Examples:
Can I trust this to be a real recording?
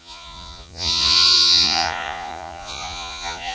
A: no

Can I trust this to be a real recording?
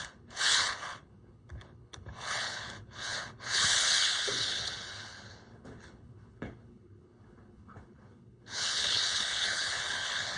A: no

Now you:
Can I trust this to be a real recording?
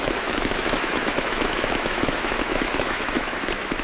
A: no